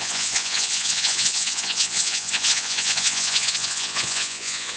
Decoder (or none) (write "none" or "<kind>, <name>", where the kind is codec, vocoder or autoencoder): vocoder, Vocos